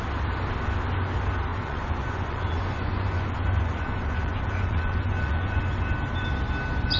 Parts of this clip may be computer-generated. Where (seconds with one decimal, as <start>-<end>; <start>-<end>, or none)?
1.5-5.6